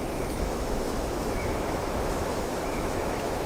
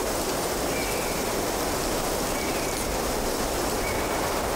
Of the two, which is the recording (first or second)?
second